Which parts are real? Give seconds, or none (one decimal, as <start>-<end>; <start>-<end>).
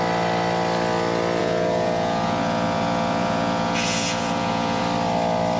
0.0-1.4; 4.8-5.6